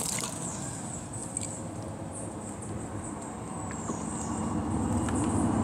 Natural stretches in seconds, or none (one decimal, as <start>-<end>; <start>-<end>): 1.2-3.5